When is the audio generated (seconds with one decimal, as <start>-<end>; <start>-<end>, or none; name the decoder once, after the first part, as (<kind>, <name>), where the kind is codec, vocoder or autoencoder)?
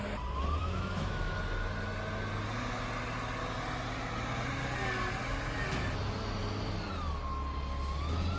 0.6-1.4 (autoencoder, DAC-VAE)